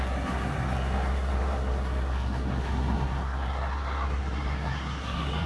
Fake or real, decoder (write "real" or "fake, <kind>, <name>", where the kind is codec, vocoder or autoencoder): fake, codec, SNAC